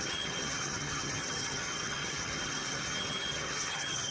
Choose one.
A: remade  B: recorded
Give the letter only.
A